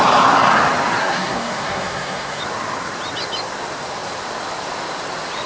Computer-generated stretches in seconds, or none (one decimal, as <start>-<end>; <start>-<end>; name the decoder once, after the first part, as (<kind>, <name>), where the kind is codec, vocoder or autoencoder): 1.0-2.4 (codec, SNAC)